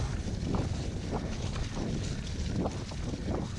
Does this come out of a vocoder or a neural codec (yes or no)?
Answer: no